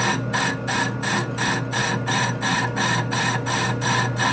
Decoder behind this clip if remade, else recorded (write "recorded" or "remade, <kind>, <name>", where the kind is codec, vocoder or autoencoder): recorded